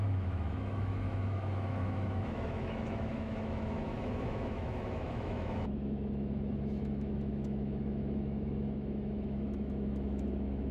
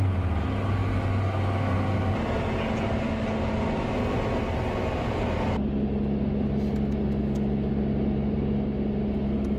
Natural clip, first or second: second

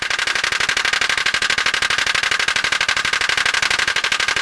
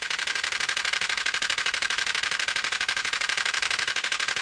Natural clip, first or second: first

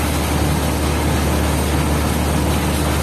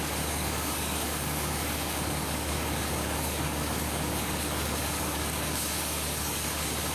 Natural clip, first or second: first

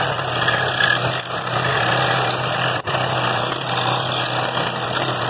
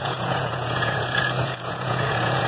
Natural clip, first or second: first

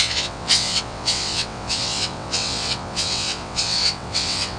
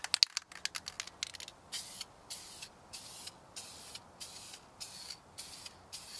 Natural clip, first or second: second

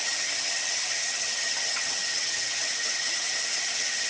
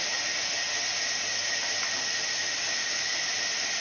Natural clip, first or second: second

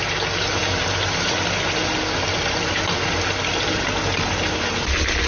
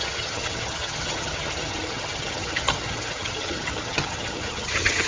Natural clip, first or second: first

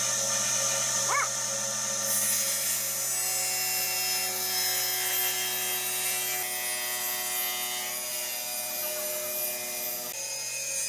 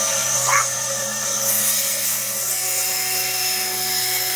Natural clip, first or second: first